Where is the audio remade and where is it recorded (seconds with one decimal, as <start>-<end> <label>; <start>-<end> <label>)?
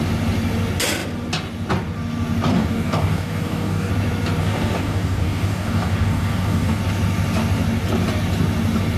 0.0-2.5 recorded; 2.5-3.9 remade; 3.9-4.4 recorded; 4.4-6.8 remade; 6.8-9.0 recorded